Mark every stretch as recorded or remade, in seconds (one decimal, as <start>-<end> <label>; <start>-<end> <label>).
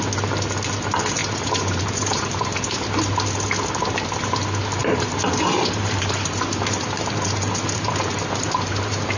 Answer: 0.0-1.2 recorded; 1.2-2.4 remade; 2.4-4.8 recorded; 4.8-9.2 remade